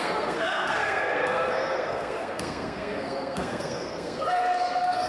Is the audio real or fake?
fake